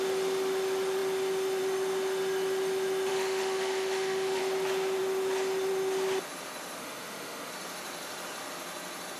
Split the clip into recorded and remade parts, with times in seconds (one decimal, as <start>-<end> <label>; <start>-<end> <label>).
0.0-3.1 recorded; 3.1-4.4 remade; 4.4-6.8 recorded; 6.8-7.5 remade; 7.5-9.2 recorded